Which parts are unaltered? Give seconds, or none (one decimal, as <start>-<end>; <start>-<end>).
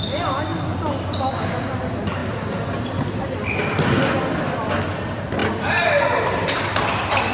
0.0-7.3